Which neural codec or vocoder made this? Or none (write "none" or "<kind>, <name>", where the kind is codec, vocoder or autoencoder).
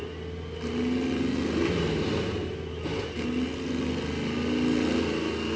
none